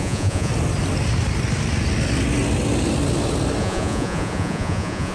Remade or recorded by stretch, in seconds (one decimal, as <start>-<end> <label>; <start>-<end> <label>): 0.0-0.5 remade; 0.5-3.6 recorded; 3.6-5.1 remade